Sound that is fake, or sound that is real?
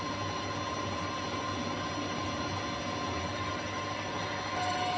real